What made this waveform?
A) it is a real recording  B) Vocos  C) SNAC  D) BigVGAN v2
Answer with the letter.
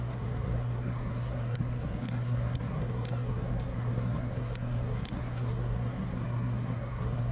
C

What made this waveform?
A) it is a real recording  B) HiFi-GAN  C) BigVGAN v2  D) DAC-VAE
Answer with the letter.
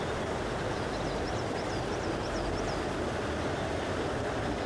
C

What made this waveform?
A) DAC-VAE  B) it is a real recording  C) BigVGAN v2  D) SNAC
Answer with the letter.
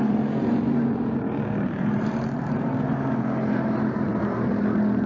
C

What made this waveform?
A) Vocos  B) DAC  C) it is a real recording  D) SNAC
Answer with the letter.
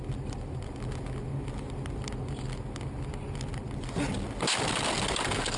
C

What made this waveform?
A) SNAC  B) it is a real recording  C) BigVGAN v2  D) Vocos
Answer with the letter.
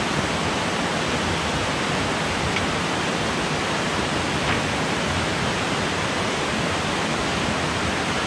B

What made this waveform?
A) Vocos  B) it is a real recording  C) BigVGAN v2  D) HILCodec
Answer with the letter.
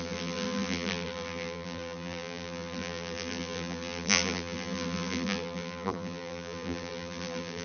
C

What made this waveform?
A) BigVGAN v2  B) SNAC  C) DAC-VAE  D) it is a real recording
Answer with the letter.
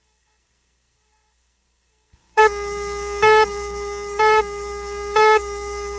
B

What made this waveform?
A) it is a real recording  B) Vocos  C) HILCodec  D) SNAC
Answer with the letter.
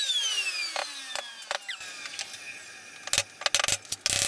A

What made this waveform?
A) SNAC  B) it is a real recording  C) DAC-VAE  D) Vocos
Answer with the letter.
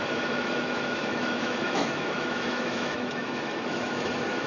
C